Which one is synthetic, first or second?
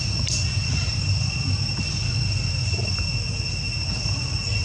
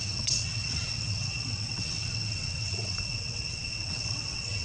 second